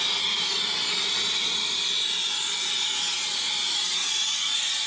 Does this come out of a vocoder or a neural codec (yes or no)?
no